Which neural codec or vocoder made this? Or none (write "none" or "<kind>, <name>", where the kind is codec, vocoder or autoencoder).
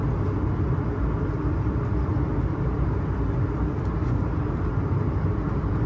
none